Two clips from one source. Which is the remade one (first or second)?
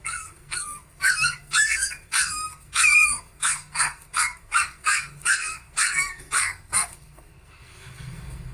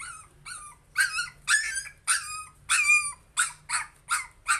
first